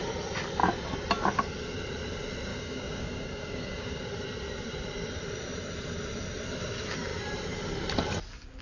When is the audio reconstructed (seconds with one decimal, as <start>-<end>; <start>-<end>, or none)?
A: 2.5-4.0